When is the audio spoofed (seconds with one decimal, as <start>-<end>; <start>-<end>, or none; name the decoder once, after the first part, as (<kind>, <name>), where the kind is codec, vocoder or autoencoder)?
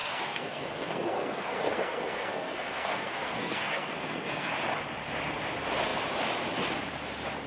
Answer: 0.0-4.5 (codec, SNAC)